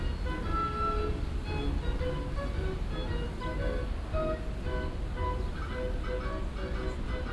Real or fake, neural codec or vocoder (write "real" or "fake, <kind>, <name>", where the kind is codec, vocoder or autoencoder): real